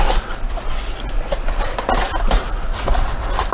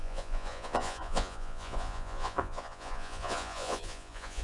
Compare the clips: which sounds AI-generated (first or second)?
second